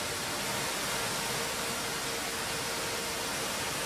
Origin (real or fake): real